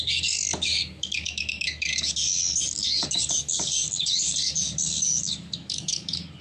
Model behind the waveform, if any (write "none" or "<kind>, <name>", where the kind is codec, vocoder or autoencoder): codec, DAC